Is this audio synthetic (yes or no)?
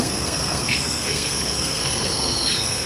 yes